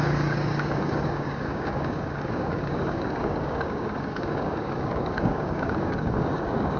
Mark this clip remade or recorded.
remade